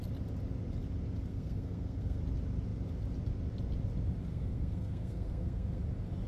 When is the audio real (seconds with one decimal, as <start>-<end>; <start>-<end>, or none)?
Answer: 0.0-1.3; 2.2-4.3; 5.8-6.3

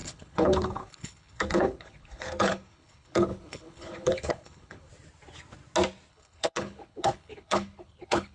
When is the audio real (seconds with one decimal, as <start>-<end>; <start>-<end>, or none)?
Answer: 4.9-6.1